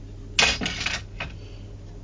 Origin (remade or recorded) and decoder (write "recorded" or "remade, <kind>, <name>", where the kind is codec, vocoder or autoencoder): recorded